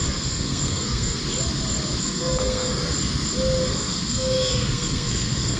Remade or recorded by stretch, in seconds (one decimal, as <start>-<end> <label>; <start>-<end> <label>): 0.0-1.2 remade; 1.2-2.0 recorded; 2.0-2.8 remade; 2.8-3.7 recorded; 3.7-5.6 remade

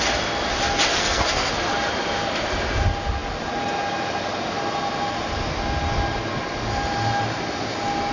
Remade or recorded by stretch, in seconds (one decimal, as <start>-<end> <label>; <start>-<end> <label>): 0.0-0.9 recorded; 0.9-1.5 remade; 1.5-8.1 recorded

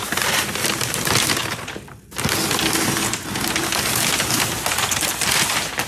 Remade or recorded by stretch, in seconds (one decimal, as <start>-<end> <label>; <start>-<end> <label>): 0.0-5.9 recorded